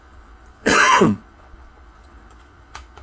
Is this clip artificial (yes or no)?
yes